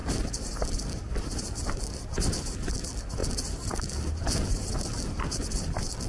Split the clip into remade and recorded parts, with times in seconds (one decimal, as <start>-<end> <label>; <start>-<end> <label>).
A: 0.0-6.1 recorded